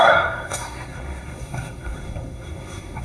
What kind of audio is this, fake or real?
fake